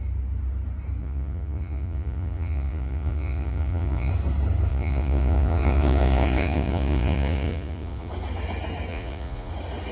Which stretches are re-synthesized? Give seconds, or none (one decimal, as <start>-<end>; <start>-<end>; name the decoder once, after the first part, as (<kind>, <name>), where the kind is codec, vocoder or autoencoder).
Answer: 1.0-4.1 (vocoder, Vocos); 4.7-8.1; 8.9-9.5